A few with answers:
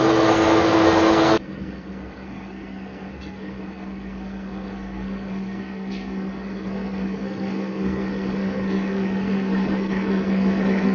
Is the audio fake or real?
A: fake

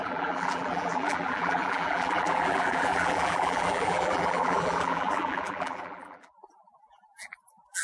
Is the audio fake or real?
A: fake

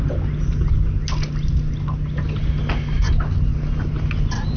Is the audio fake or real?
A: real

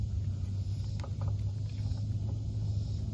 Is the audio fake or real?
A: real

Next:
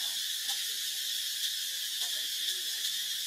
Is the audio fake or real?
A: real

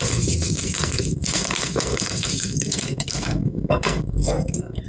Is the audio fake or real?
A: fake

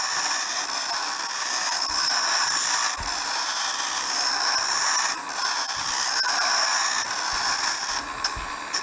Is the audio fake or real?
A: real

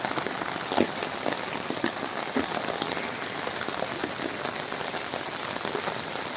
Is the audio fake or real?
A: real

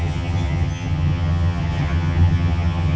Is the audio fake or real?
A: fake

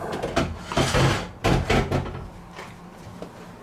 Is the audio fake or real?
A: real